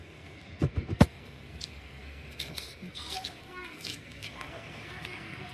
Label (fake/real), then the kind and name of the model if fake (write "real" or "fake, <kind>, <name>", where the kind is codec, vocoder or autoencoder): fake, codec, SNAC